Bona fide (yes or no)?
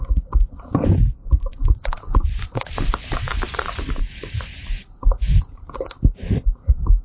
no